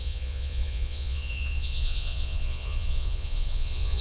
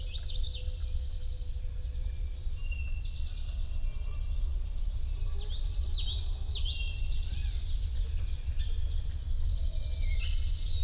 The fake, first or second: first